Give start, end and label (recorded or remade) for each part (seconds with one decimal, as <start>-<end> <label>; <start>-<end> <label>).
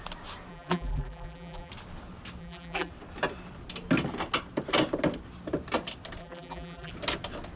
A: 0.0-0.5 recorded; 0.5-1.7 remade; 1.7-2.4 recorded; 2.4-2.9 remade; 2.9-6.2 recorded; 6.2-6.9 remade; 6.9-7.6 recorded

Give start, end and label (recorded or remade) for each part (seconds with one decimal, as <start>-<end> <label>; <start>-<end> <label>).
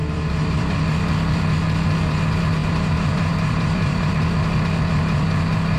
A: 0.0-0.8 remade; 0.8-2.6 recorded; 2.6-4.1 remade; 4.1-5.8 recorded